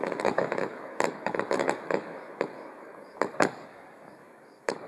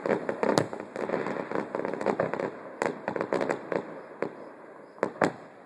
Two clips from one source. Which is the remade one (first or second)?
first